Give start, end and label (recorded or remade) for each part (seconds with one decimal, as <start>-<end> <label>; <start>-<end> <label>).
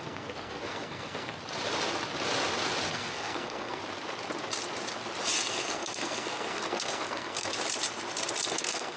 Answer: 0.0-1.4 remade; 1.4-2.9 recorded; 2.9-3.8 remade; 3.8-5.5 recorded; 5.5-7.5 remade; 7.5-8.5 recorded; 8.5-9.0 remade